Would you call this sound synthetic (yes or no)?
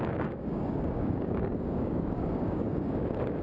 yes